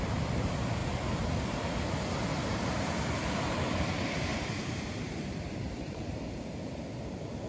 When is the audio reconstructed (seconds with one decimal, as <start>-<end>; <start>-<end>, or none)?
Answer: 0.0-7.5